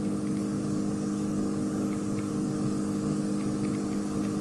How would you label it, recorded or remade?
remade